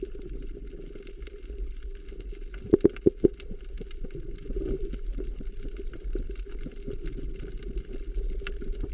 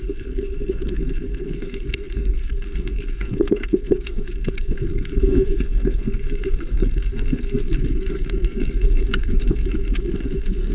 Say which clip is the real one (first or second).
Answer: first